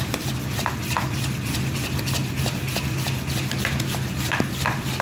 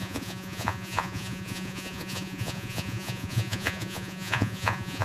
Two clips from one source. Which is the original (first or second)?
first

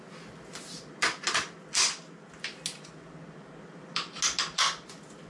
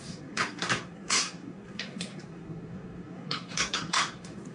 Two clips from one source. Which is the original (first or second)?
first